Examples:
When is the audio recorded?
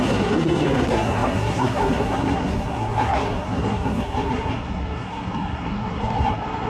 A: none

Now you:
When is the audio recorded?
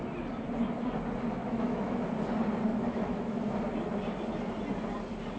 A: 0.0-1.4; 2.1-2.7; 3.4-5.4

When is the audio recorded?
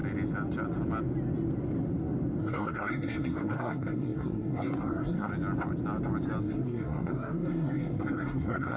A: 0.0-2.4; 5.3-6.4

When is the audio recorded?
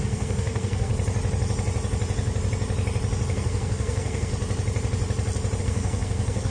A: 0.9-3.3; 4.3-5.6